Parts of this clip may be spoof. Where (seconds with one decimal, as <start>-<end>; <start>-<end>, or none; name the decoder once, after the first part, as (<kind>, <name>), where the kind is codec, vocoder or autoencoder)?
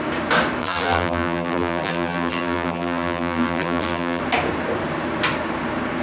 0.6-4.2 (vocoder, BigVGAN v2)